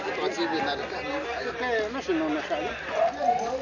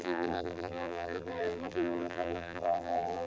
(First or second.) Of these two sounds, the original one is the first